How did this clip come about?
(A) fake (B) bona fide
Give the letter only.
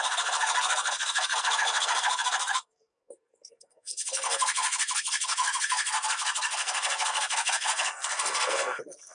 A